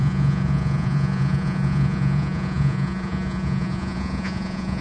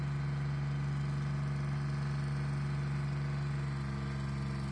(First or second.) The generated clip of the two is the first